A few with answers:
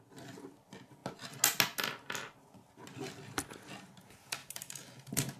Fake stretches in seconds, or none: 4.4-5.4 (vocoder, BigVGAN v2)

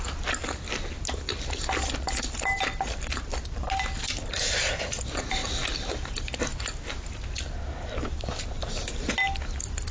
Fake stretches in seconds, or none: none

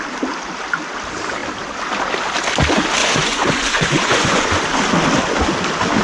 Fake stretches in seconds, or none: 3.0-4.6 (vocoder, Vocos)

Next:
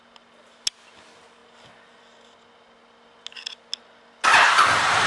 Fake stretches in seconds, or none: none